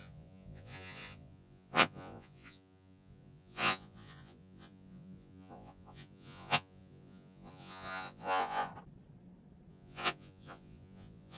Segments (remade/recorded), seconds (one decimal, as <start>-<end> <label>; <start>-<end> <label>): 0.0-8.7 remade; 8.7-9.7 recorded; 9.7-11.4 remade